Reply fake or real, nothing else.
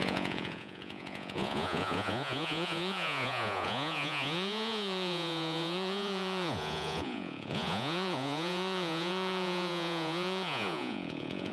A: fake